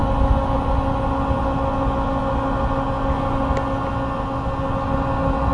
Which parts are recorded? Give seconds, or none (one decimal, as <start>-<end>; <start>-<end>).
0.0-5.5